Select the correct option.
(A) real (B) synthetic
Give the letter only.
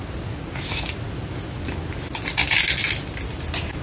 A